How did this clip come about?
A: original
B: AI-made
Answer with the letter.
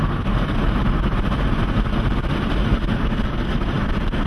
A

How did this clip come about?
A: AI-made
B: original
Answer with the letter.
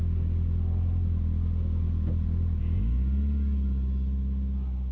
B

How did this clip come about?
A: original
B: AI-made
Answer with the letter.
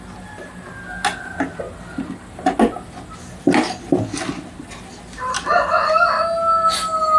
A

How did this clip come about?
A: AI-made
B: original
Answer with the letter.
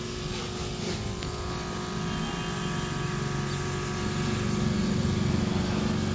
B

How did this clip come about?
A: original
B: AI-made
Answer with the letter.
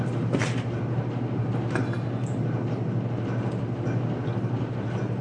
A